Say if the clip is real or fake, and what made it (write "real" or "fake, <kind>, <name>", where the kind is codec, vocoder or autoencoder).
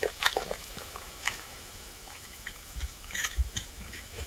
fake, autoencoder, DAC-VAE